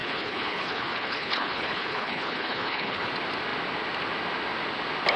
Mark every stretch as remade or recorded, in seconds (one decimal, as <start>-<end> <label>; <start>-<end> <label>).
0.0-3.1 remade; 3.1-5.2 recorded